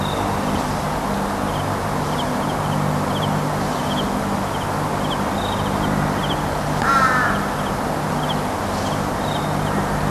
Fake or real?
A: real